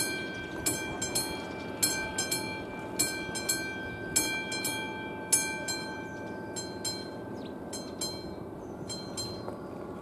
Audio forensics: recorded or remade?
recorded